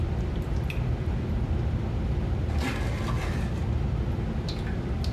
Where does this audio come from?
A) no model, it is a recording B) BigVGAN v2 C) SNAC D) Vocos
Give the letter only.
B